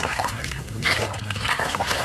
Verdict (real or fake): fake